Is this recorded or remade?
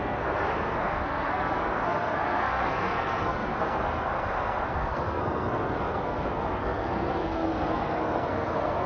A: remade